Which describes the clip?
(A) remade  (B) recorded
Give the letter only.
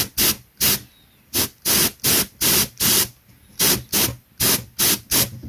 B